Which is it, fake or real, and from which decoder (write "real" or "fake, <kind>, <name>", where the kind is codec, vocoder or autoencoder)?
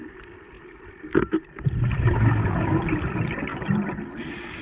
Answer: real